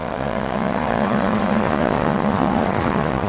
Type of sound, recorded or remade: remade